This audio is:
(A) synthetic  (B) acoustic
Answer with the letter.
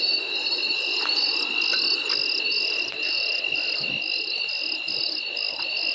B